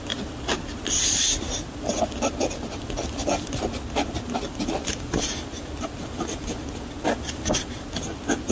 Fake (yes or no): no